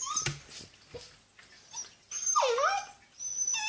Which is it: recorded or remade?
recorded